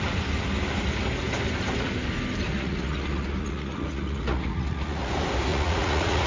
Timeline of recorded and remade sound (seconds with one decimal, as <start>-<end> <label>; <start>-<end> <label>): 0.0-2.5 recorded; 2.5-5.1 remade; 5.1-5.5 recorded; 5.5-6.3 remade

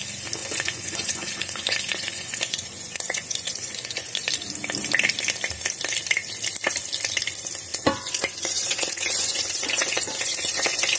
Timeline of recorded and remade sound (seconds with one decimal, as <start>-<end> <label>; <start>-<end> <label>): 0.0-0.4 recorded; 0.4-4.3 remade; 4.3-7.7 recorded; 7.7-11.0 remade

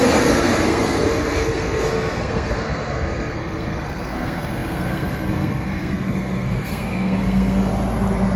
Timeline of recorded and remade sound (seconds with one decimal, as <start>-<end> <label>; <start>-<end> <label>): 0.0-7.7 remade; 7.7-8.4 recorded

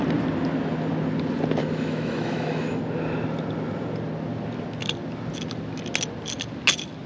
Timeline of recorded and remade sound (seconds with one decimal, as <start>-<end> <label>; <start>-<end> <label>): 0.0-1.6 recorded; 1.6-2.8 remade; 2.8-7.1 recorded

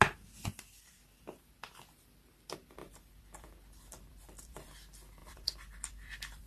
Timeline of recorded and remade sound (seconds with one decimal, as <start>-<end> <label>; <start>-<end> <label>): 0.0-0.5 recorded; 0.5-1.0 remade; 1.0-2.8 recorded; 2.8-4.7 remade; 4.7-5.2 recorded; 5.2-6.5 remade

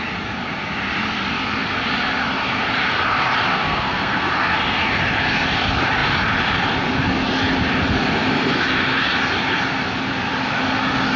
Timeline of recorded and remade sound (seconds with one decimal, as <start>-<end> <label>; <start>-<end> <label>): 0.0-3.5 recorded; 3.5-4.3 remade; 4.3-11.2 recorded

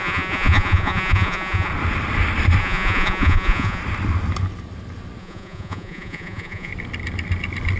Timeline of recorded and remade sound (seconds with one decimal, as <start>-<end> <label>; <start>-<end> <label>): 0.0-1.7 remade; 1.7-2.6 recorded; 2.6-3.8 remade; 3.8-5.2 recorded; 5.2-6.7 remade; 6.7-7.8 recorded

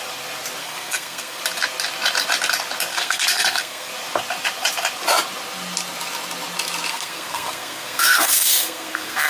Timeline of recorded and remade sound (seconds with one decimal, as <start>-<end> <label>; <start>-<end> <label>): 0.0-0.6 recorded; 0.6-1.4 remade; 1.4-2.9 recorded; 2.9-3.9 remade; 3.9-6.9 recorded; 6.9-9.3 remade